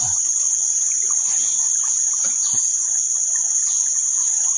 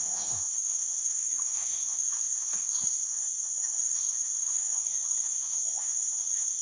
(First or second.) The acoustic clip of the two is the first